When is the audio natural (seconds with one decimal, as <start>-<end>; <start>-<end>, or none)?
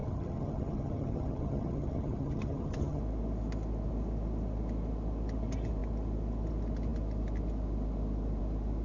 3.0-8.8